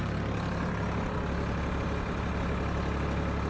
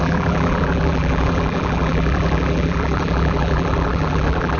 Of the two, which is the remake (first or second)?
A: second